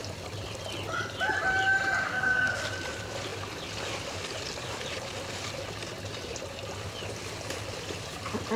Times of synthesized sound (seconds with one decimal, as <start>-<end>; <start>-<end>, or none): 2.0-2.6